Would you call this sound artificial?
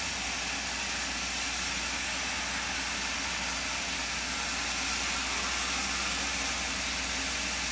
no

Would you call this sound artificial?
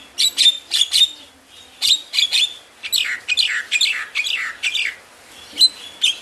no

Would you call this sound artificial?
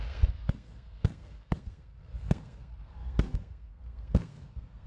yes